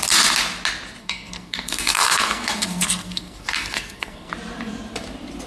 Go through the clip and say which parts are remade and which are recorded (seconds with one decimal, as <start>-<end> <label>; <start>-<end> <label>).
0.0-1.0 recorded; 1.0-4.3 remade; 4.3-5.5 recorded